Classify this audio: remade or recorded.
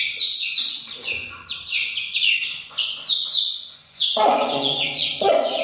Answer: remade